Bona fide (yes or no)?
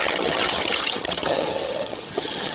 no